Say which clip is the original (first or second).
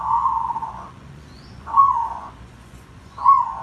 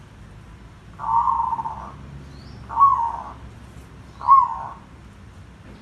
second